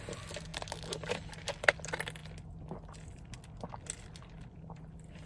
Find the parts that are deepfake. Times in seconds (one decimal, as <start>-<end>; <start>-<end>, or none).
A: 0.5-1.3